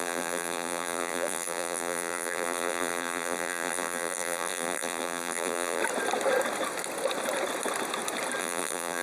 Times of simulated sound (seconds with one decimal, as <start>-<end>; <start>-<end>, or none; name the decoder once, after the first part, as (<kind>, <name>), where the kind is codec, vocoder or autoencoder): 0.0-5.8 (vocoder, BigVGAN v2); 8.4-9.0